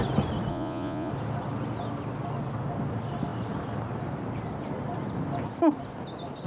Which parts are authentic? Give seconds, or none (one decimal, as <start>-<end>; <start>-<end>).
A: 0.0-0.5; 1.1-6.5